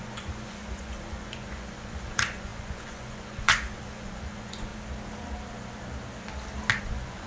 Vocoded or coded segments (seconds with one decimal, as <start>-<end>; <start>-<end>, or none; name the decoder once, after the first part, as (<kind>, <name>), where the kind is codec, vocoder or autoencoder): 0.0-4.7 (vocoder, Vocos); 6.8-7.3